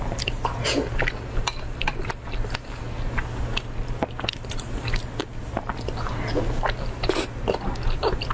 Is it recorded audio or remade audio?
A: recorded